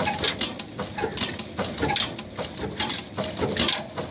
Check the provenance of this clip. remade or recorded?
recorded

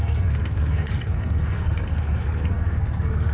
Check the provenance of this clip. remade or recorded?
remade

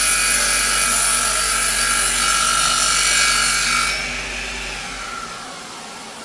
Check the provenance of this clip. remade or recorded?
recorded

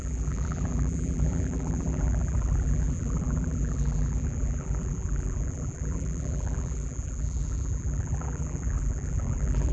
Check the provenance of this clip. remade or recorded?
remade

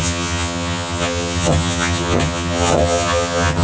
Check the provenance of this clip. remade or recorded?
remade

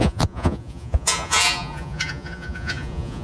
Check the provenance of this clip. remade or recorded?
remade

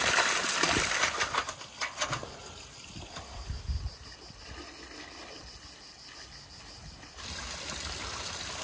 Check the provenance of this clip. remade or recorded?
recorded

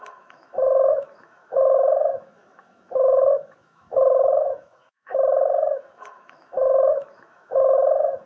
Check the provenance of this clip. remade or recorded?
remade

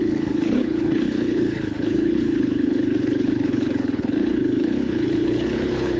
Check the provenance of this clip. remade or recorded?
remade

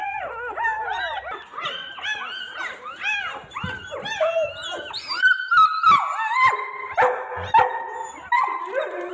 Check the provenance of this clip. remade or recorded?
recorded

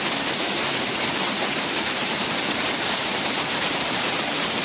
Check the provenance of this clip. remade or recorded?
remade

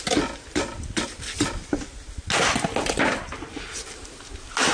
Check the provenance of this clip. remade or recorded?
recorded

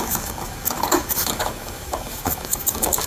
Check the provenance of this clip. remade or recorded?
remade